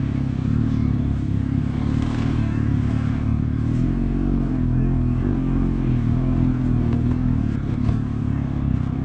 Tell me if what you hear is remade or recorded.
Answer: remade